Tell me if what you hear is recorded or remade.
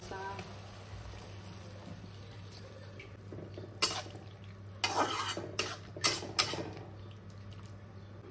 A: recorded